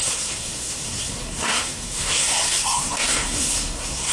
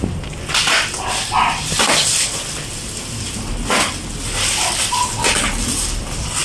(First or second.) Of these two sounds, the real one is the second